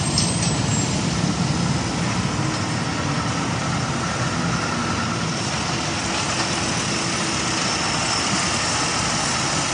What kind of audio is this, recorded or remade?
recorded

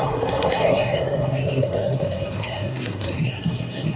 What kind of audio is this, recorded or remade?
remade